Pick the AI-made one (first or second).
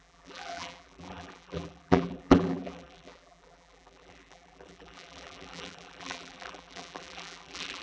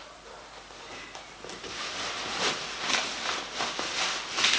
first